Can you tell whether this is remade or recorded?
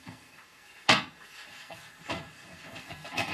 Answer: remade